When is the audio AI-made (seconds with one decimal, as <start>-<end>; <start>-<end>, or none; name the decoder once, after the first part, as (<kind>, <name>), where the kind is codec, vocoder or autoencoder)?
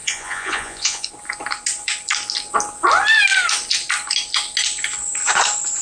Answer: 0.0-1.1 (vocoder, Vocos)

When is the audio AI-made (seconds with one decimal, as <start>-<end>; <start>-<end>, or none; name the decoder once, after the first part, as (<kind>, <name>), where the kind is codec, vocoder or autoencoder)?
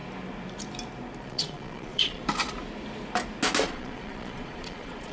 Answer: 1.2-2.2 (vocoder, Vocos); 3.7-5.1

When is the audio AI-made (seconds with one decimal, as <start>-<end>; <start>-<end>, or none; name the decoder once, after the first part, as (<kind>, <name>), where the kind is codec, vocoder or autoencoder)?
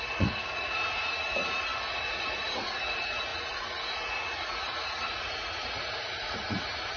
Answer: 0.0-7.0 (vocoder, Vocos)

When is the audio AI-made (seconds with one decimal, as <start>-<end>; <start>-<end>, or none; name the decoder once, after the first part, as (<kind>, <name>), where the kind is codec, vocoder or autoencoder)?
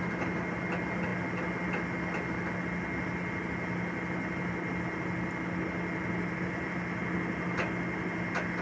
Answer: none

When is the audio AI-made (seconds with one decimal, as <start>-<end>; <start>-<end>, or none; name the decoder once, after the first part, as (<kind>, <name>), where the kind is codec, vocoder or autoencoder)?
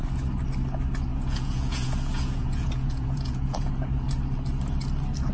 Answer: 1.1-3.7 (vocoder, Vocos)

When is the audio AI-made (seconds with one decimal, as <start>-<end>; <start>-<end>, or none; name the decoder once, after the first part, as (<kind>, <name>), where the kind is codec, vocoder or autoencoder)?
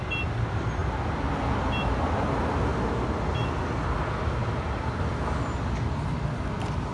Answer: none